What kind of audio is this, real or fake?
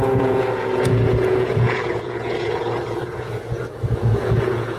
fake